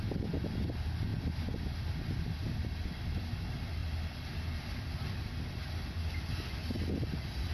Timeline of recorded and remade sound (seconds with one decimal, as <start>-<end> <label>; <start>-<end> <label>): 0.0-7.5 recorded